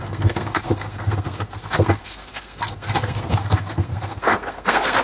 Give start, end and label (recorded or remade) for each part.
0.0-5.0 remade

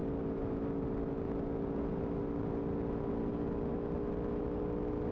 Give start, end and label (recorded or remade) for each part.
0.0-5.1 recorded

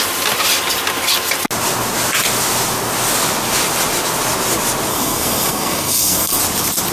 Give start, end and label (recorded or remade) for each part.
0.0-4.9 recorded; 4.9-6.4 remade; 6.4-6.9 recorded